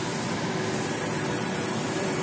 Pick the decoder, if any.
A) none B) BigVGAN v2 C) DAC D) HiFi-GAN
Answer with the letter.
B